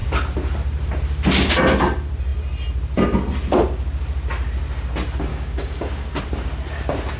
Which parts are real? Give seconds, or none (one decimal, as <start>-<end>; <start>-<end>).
0.0-5.3; 6.2-7.2